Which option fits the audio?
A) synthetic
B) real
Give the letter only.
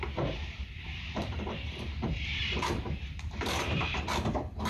A